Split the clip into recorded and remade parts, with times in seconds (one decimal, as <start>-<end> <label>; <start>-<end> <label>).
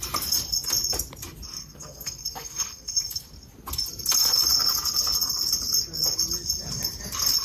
0.0-1.6 recorded; 1.6-3.2 remade; 3.2-7.4 recorded